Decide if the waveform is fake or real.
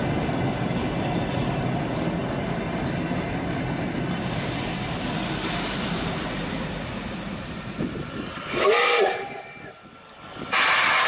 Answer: real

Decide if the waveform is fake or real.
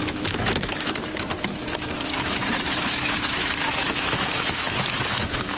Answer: fake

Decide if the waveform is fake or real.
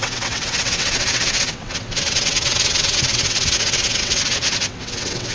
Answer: fake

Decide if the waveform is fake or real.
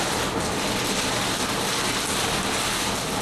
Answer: real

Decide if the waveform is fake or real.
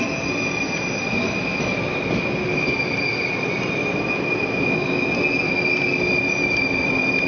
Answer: real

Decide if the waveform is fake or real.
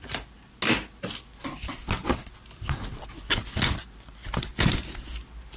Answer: real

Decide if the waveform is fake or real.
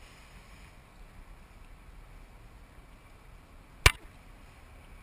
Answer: real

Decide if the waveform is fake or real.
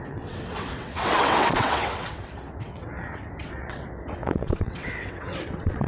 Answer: fake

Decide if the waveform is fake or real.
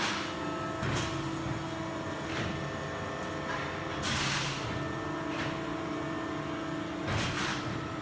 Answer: real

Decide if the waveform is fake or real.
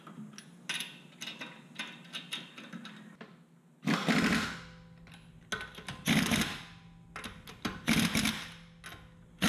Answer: real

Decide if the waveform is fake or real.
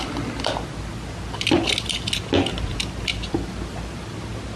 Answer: real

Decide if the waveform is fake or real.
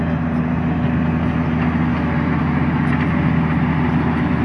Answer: real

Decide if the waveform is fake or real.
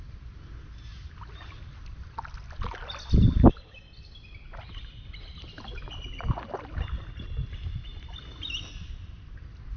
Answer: real